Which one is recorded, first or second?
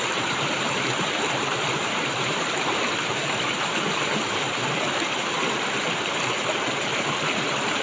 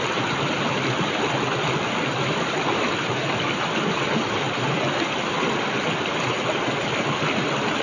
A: second